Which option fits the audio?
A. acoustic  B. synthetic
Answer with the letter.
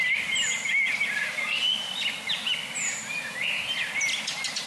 A